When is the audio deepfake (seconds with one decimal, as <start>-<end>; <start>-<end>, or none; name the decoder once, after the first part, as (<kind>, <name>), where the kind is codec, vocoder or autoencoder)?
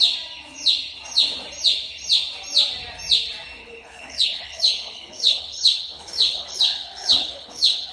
3.6-7.9 (codec, HILCodec)